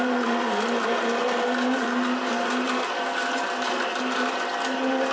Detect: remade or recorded recorded